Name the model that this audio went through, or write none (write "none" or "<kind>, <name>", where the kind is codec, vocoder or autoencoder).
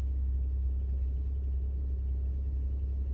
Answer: none